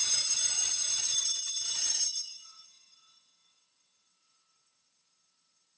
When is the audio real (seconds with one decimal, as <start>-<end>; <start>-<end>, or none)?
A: none